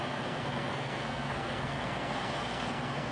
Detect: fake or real fake